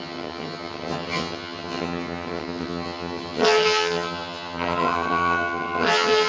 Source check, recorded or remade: remade